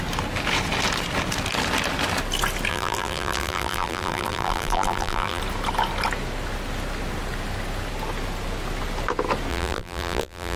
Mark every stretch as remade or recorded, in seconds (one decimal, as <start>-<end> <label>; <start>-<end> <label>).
0.0-2.7 recorded; 2.7-5.4 remade; 5.4-9.5 recorded; 9.5-10.6 remade

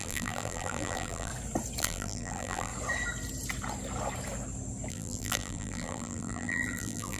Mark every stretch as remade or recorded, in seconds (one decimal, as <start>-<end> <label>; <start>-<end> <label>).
0.0-1.3 remade; 1.3-1.8 recorded; 1.8-2.7 remade; 2.7-4.9 recorded; 4.9-7.2 remade

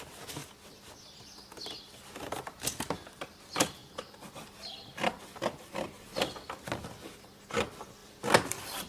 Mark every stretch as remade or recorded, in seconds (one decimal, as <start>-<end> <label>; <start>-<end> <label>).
0.0-8.0 recorded; 8.0-8.9 remade

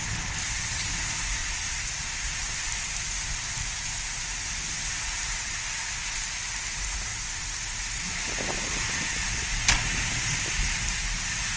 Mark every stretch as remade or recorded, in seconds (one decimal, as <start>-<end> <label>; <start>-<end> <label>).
0.0-1.4 recorded; 1.4-2.8 remade; 2.8-11.6 recorded

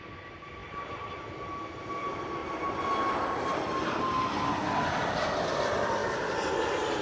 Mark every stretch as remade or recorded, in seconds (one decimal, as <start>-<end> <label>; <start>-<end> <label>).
0.0-2.4 remade; 2.4-3.7 recorded; 3.7-6.0 remade; 6.0-7.0 recorded

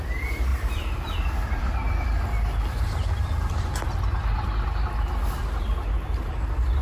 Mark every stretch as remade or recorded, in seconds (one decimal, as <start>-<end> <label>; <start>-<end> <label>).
0.0-0.5 recorded; 0.5-3.6 remade; 3.6-6.8 recorded

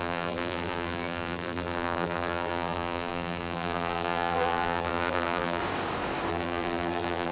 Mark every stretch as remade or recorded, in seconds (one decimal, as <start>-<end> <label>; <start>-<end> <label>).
0.0-5.6 remade; 5.6-6.3 recorded; 6.3-7.3 remade

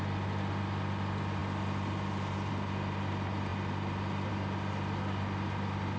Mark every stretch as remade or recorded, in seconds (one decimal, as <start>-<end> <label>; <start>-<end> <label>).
0.0-6.0 recorded